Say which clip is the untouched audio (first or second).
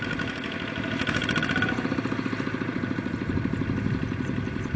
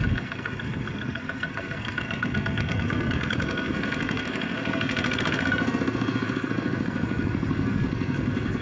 first